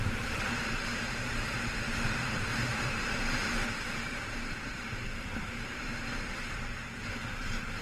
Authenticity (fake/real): fake